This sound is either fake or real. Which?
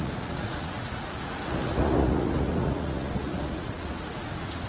fake